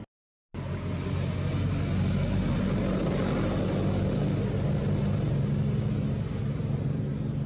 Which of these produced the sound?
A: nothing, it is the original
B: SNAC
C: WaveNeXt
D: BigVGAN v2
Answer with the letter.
A